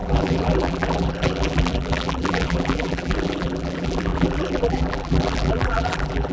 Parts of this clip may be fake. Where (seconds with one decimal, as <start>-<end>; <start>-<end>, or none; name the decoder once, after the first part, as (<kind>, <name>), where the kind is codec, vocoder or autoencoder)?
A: 0.0-6.3 (vocoder, BigVGAN v2)